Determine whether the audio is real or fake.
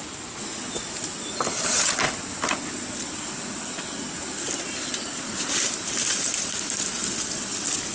real